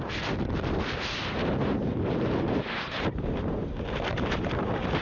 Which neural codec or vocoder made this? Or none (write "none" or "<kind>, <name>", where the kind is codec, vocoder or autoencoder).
vocoder, BigVGAN v2